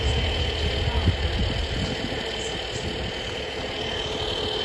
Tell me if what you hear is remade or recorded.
recorded